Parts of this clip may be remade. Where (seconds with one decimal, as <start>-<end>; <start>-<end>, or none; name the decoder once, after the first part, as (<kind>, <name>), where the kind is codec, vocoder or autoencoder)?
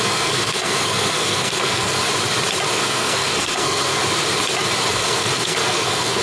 0.0-2.0 (codec, SNAC); 2.7-4.0; 4.9-6.2